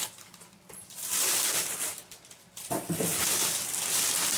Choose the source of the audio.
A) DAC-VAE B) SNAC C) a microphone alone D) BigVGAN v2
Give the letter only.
C